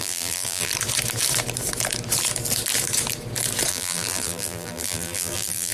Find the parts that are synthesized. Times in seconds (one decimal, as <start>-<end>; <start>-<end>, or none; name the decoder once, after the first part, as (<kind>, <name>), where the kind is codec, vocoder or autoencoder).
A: 0.0-0.7 (vocoder, BigVGAN v2); 3.7-5.7